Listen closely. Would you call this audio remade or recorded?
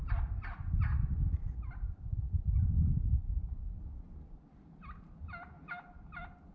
recorded